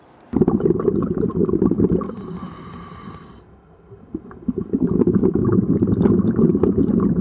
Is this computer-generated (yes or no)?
no